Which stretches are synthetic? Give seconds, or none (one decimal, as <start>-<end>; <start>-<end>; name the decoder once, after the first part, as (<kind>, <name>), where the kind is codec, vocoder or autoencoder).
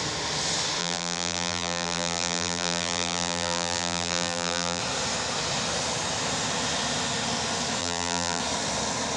0.8-4.8 (vocoder, BigVGAN v2); 7.8-8.4